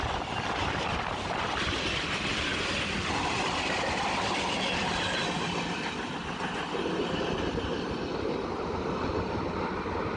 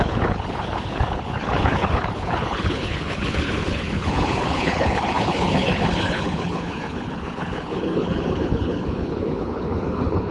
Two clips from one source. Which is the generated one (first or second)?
second